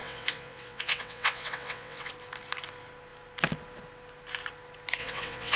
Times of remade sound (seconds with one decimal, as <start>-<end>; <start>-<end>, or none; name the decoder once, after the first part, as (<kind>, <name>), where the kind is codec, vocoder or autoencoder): 0.0-2.1 (vocoder, WaveNeXt); 5.0-5.6